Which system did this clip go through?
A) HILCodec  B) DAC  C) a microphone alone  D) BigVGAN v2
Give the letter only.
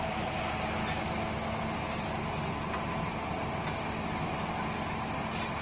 C